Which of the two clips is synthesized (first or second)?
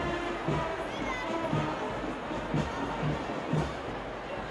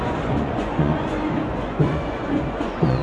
second